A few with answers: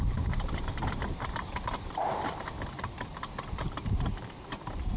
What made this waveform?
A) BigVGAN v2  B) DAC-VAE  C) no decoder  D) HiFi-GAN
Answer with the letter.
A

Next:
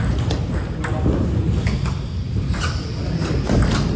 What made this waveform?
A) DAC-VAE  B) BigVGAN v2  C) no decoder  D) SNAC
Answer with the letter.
C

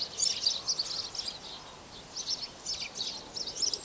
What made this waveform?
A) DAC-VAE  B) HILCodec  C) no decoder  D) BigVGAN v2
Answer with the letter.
C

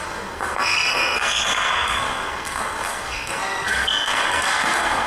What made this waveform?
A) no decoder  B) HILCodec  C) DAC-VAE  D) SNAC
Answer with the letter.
D